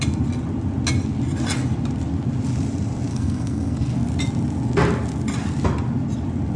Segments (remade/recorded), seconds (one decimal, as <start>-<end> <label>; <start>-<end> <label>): 0.0-3.1 recorded; 3.1-3.9 remade; 3.9-6.6 recorded